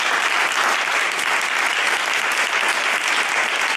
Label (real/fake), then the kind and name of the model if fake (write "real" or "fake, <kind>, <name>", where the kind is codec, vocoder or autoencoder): real